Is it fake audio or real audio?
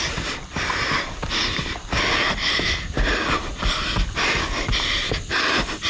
real